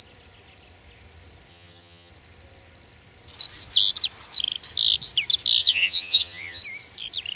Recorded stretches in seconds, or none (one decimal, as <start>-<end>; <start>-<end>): 0.0-1.5; 2.1-5.6; 6.6-7.4